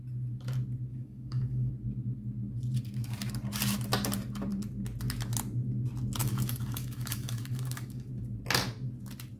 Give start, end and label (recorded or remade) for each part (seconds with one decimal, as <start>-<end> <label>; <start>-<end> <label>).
0.0-0.9 recorded; 0.9-1.7 remade; 1.7-6.2 recorded; 6.2-8.1 remade; 8.1-9.4 recorded